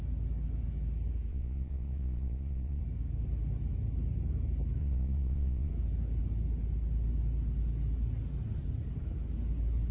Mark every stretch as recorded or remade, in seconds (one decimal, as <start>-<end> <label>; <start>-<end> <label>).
0.0-1.3 recorded; 1.3-2.8 remade; 2.8-4.8 recorded; 4.8-5.7 remade; 5.7-9.9 recorded